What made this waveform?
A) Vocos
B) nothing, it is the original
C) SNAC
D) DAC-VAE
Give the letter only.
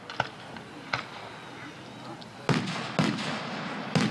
B